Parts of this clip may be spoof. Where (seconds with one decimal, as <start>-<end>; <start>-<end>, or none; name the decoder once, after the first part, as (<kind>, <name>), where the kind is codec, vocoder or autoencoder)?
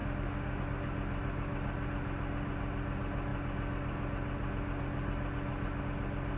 0.0-0.6 (autoencoder, DAC-VAE)